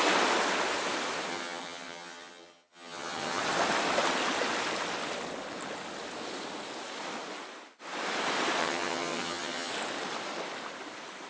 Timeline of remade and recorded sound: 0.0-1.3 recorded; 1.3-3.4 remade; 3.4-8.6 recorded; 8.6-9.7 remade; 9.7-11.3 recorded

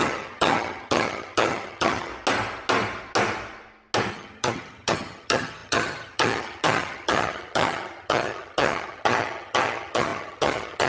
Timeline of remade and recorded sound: 0.0-2.1 remade; 2.1-4.1 recorded; 4.1-10.9 remade

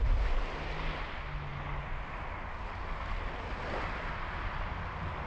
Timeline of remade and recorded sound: 0.0-5.3 recorded

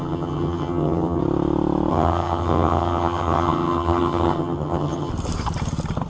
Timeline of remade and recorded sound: 0.0-1.2 remade; 1.2-1.9 recorded; 1.9-5.1 remade; 5.1-6.1 recorded